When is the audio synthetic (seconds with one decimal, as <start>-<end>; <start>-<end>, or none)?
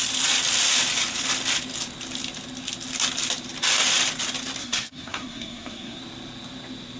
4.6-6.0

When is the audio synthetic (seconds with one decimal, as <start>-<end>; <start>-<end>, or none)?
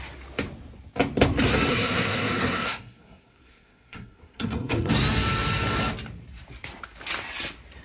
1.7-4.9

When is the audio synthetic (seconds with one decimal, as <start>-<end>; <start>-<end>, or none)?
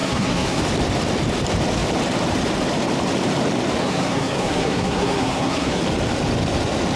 0.0-0.6; 3.8-5.8